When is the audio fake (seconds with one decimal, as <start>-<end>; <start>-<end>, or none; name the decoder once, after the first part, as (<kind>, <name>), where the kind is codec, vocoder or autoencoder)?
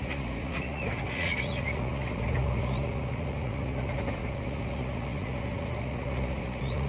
0.0-6.9 (vocoder, Vocos)